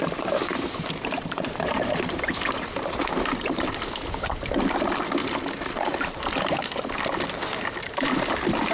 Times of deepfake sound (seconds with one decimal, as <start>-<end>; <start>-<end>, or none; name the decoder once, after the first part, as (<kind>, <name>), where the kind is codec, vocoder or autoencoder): 0.0-3.8 (vocoder, BigVGAN v2); 5.2-6.6